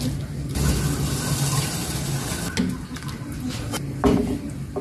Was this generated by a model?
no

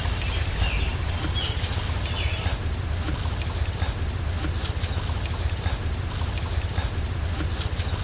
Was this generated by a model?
no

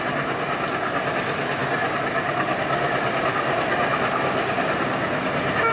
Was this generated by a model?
no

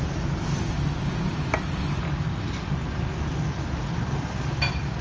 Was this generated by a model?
no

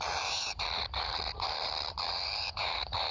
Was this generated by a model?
yes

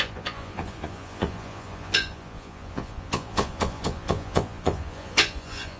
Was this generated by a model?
yes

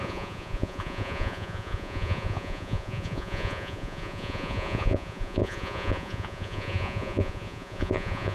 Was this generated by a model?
yes